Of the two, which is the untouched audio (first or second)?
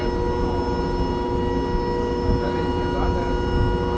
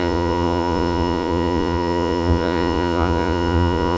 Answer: first